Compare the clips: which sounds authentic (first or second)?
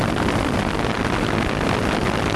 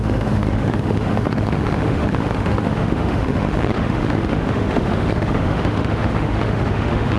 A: first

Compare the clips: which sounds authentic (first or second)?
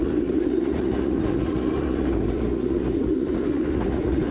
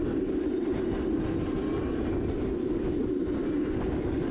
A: second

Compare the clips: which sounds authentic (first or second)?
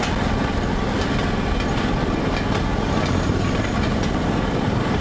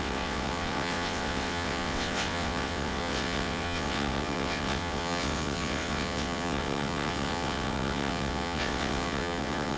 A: first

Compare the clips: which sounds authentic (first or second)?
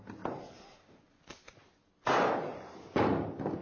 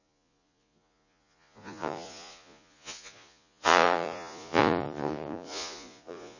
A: first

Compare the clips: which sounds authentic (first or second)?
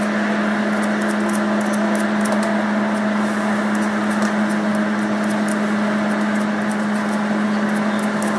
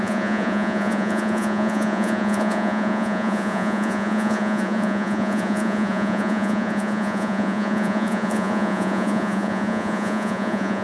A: first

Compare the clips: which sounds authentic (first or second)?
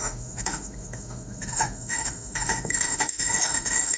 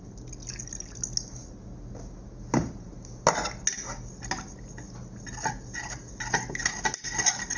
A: second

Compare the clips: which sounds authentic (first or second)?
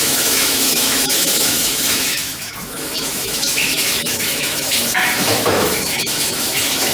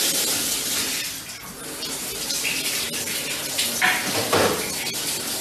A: second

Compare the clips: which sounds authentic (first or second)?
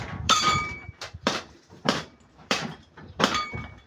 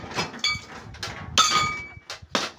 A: second